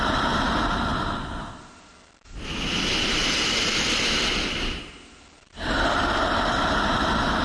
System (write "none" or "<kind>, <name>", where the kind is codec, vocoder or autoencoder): none